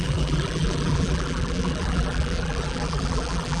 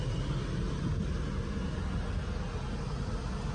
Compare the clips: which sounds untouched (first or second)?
second